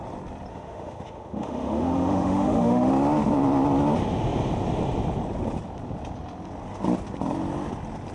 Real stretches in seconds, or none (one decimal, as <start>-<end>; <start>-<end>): 0.0-0.5; 2.9-8.1